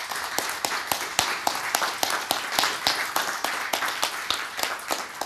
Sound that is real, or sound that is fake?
real